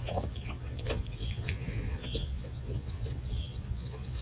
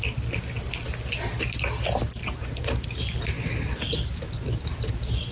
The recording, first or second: second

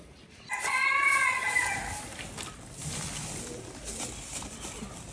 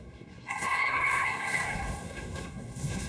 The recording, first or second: first